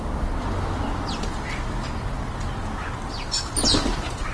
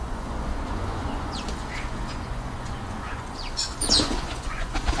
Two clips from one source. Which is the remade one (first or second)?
second